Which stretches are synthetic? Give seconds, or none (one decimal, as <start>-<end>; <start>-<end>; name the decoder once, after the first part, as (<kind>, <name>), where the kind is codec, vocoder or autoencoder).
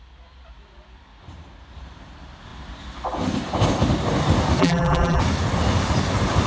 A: 4.6-5.2 (vocoder, BigVGAN v2)